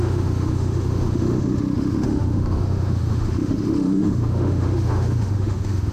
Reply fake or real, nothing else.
fake